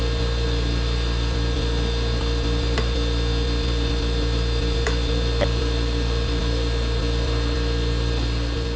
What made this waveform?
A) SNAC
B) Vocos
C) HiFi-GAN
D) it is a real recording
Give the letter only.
D